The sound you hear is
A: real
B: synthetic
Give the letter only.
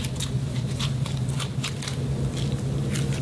A